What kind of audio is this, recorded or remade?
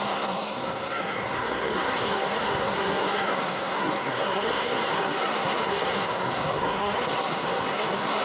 remade